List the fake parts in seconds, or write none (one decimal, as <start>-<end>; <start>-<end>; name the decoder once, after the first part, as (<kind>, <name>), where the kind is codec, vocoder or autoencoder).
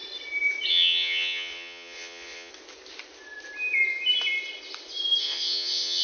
0.7-2.5 (vocoder, Vocos); 5.2-6.0